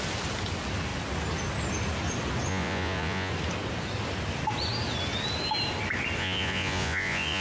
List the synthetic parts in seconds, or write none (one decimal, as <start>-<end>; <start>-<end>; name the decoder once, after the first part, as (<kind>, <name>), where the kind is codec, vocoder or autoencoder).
2.5-3.3 (vocoder, Vocos); 6.2-7.4